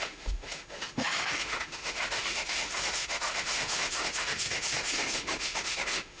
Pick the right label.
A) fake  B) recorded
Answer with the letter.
A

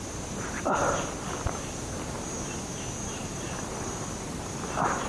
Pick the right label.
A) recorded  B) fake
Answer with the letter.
A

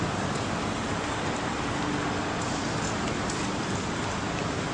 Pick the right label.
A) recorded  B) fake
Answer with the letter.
A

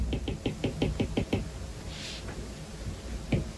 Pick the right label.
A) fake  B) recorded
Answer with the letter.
B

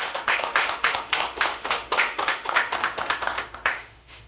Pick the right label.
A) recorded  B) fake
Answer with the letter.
B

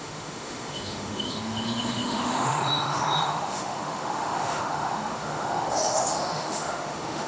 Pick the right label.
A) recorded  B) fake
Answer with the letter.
B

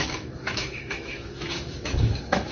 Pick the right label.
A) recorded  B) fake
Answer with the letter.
B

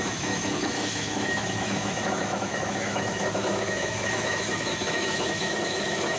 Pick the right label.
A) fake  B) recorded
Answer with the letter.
A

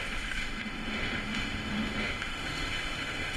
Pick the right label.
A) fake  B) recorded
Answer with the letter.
A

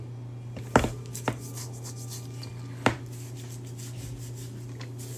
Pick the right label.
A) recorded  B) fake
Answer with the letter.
A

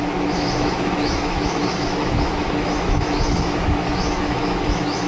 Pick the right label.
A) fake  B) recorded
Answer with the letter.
A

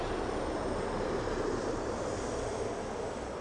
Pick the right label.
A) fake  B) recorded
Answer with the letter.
B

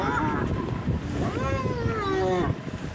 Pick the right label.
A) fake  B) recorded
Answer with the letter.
B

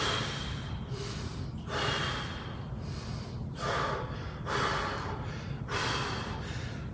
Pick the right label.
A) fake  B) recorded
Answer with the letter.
B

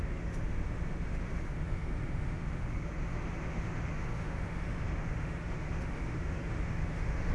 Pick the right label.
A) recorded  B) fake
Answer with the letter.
B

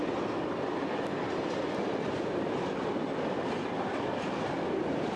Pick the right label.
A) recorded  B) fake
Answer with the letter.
A